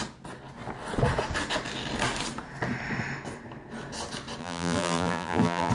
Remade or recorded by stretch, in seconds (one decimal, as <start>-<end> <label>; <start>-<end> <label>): 0.0-4.4 recorded; 4.4-5.7 remade